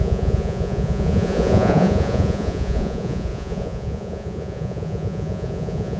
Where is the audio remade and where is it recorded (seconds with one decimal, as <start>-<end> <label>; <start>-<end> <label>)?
0.0-6.0 remade